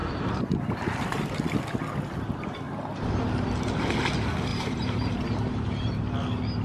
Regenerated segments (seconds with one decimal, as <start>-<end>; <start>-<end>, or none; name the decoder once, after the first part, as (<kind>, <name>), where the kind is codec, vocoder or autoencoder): 4.5-5.9 (vocoder, BigVGAN v2)